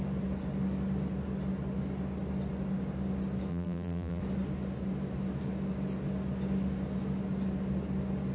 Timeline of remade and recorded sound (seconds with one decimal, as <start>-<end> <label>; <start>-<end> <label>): 0.0-3.5 recorded; 3.5-4.2 remade; 4.2-8.3 recorded